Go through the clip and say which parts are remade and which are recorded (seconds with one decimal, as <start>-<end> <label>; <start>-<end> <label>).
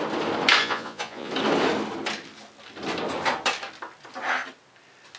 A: 0.0-0.6 recorded; 0.6-1.3 remade; 1.3-5.2 recorded